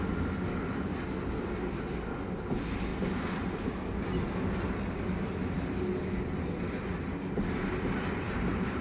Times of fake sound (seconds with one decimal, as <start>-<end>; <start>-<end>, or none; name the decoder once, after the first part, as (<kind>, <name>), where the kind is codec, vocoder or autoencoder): none